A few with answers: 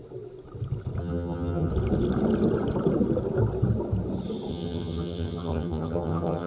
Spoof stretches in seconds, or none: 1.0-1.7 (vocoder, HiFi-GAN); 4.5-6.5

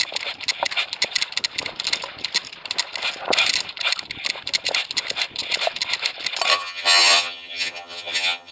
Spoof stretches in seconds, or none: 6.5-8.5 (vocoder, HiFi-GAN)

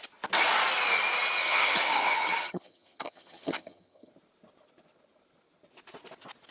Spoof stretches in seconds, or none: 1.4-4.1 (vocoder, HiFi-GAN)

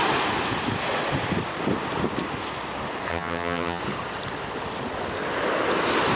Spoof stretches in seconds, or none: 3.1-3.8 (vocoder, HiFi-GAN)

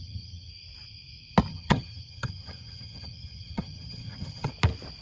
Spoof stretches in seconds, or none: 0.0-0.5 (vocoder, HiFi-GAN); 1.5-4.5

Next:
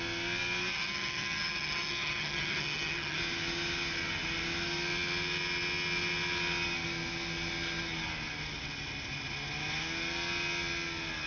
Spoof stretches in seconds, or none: 0.7-3.2 (vocoder, HiFi-GAN)

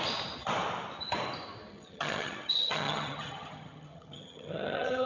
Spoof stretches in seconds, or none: 1.7-5.1 (vocoder, HiFi-GAN)